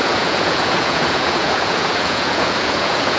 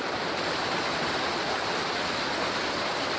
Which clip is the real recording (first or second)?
second